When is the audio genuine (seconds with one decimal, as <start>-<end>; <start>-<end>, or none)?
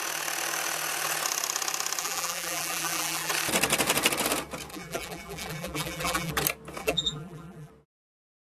0.0-2.0; 3.3-4.7; 6.3-6.8; 7.7-8.4